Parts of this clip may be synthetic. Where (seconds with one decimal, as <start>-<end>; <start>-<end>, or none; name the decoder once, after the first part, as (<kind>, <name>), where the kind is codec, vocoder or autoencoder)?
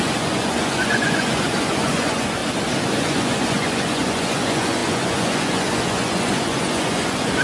0.0-2.4 (vocoder, Vocos); 2.9-7.4